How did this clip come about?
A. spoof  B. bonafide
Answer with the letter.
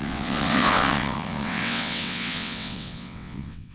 A